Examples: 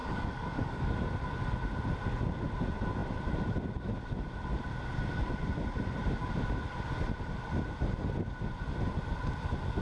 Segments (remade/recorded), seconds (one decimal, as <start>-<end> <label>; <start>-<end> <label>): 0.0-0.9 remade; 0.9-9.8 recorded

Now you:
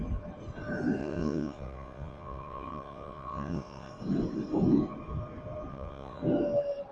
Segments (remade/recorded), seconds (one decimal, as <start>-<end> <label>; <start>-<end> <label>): 0.0-1.0 recorded; 1.0-3.9 remade; 3.9-5.7 recorded; 5.7-6.2 remade; 6.2-6.9 recorded

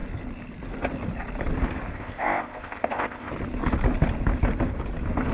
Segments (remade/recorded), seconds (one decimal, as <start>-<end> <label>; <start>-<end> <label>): 0.0-1.9 recorded; 1.9-3.3 remade; 3.3-5.3 recorded

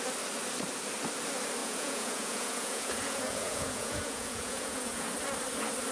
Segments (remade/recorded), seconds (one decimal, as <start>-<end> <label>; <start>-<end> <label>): 0.0-1.6 recorded; 1.6-5.1 remade; 5.1-5.9 recorded

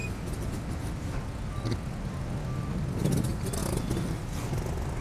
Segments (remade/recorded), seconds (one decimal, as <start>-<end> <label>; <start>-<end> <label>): 0.0-5.0 recorded

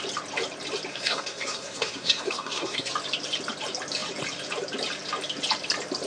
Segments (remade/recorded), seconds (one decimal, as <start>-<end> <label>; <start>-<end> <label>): 0.0-0.9 recorded; 0.9-2.9 remade; 2.9-6.1 recorded

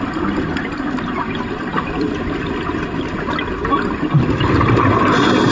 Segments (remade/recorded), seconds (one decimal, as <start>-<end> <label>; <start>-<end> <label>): 0.0-5.5 recorded

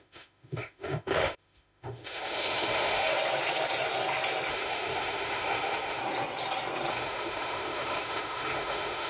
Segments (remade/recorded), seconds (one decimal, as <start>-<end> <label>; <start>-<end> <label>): 0.0-3.1 remade; 3.1-4.5 recorded; 4.5-6.0 remade; 6.0-6.9 recorded; 6.9-9.1 remade